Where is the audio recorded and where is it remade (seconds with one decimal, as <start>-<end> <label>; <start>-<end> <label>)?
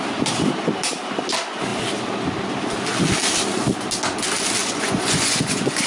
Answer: 0.0-4.6 recorded; 4.6-5.9 remade